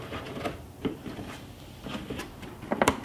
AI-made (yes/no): yes